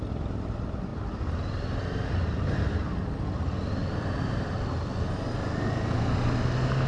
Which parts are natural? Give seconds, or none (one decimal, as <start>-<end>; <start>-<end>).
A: 0.0-6.9